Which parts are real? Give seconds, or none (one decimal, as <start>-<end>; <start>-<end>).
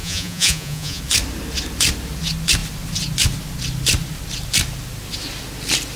1.0-6.0